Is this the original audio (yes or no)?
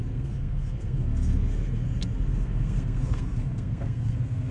no